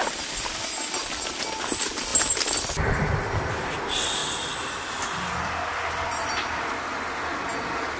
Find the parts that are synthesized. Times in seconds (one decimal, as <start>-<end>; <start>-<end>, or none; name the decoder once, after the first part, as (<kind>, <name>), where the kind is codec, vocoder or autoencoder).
none